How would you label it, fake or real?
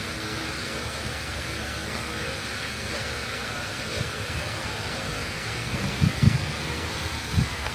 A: fake